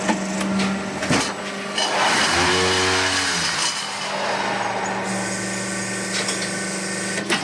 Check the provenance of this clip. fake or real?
real